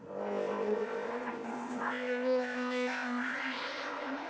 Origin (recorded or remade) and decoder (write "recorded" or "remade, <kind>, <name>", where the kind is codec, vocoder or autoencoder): remade, codec, ZipCodec